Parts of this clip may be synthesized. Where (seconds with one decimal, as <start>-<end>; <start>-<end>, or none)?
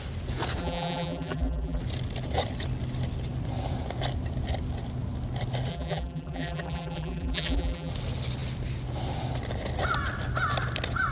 0.6-1.8; 5.7-7.9